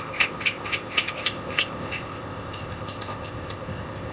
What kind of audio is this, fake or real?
fake